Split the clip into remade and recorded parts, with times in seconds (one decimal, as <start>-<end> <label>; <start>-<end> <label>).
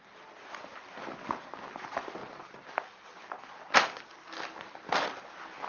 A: 0.0-5.7 recorded